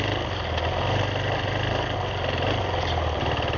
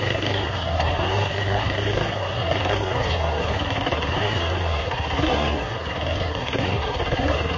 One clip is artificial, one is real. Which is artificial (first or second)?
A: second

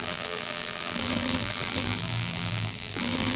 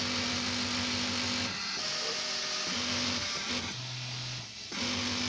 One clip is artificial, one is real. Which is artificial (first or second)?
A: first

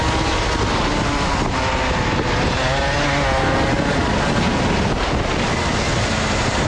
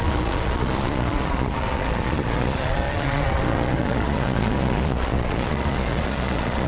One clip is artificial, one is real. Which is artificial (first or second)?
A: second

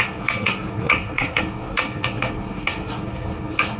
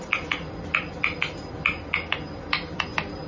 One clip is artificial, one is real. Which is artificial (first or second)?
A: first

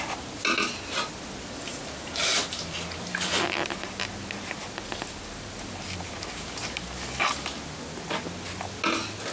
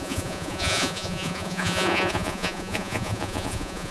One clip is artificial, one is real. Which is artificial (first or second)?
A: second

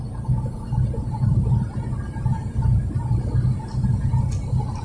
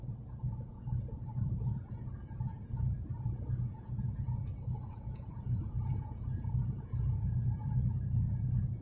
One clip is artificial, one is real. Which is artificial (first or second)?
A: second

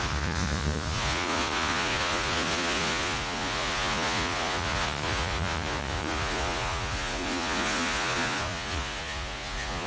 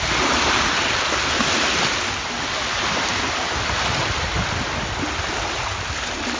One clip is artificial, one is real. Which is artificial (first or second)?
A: first